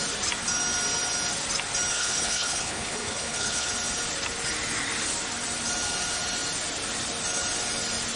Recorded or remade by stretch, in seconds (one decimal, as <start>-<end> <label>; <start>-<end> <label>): 0.0-1.9 recorded; 1.9-3.7 remade; 3.7-8.2 recorded